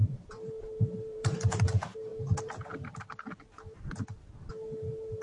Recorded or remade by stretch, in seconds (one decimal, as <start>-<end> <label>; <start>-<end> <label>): 0.0-2.1 remade; 2.1-4.5 recorded; 4.5-5.2 remade